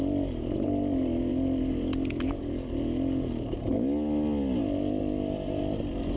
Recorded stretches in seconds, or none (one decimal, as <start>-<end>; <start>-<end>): 0.0-6.2